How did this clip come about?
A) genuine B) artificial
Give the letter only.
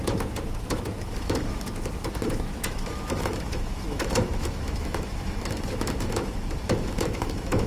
B